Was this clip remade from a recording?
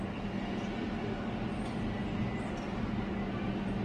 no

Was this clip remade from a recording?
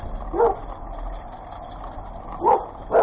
no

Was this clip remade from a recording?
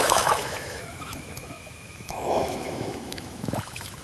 yes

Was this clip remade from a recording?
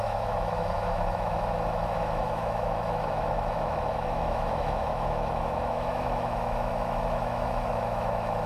yes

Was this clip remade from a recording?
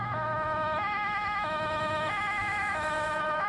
yes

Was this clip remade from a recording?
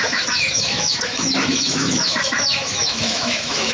yes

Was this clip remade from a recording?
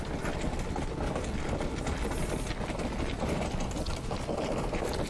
no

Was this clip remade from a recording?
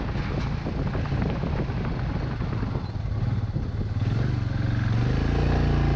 no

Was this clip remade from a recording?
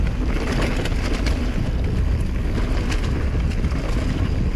no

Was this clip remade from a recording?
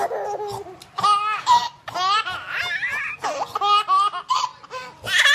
no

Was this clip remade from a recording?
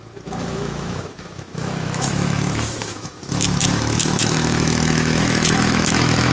yes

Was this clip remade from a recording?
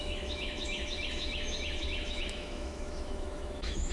yes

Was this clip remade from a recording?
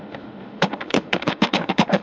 yes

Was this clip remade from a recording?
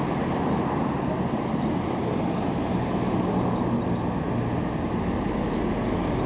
no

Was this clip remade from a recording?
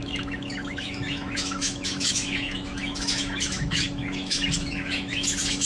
yes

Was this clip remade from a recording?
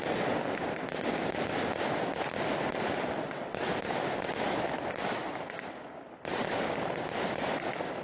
no